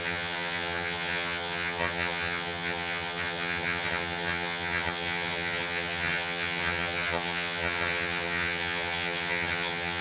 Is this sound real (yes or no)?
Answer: no